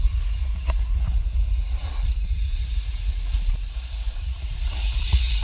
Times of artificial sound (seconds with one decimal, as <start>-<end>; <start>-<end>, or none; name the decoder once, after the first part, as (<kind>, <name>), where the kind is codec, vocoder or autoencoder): 0.0-5.4 (vocoder, Vocos)